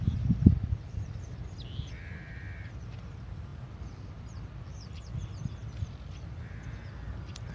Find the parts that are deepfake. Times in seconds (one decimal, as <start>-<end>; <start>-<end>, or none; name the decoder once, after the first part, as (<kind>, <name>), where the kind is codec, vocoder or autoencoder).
5.6-6.5 (vocoder, BigVGAN v2)